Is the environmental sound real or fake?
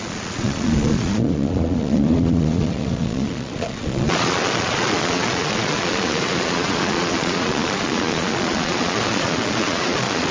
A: fake